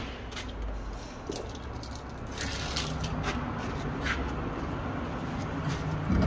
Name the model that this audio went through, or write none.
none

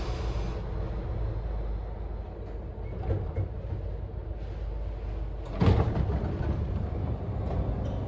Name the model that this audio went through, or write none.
none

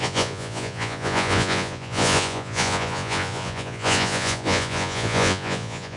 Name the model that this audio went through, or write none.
vocoder, Vocos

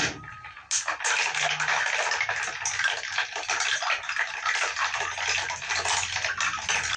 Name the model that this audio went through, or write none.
none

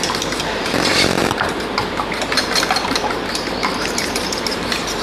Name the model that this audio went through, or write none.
vocoder, BigVGAN v2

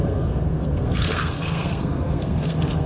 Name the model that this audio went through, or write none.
codec, SNAC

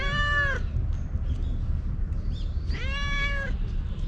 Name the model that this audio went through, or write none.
none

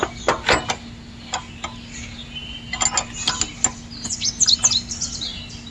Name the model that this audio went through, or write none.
none